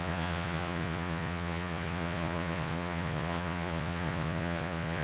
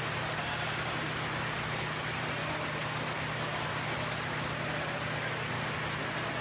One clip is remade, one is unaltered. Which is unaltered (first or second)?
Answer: second